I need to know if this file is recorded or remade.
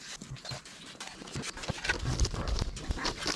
recorded